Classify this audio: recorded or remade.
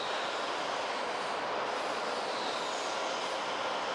recorded